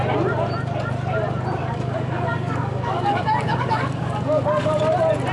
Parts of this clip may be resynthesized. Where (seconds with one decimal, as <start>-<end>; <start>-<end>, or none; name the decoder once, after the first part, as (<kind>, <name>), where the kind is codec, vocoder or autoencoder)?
1.6-4.8 (codec, DAC)